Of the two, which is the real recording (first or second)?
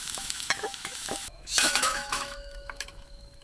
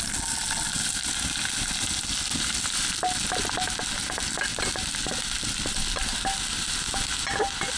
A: second